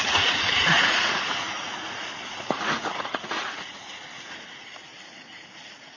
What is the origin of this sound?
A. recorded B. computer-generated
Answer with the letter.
B